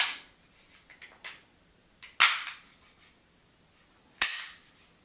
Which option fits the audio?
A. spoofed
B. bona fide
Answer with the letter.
B